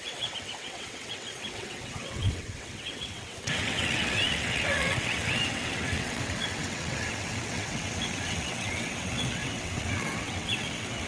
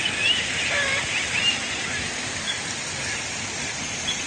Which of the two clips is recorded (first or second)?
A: second